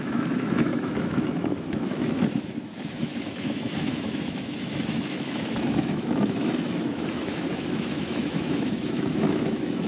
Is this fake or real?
fake